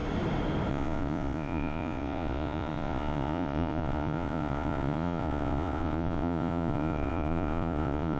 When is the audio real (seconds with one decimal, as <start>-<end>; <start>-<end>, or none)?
0.0-0.7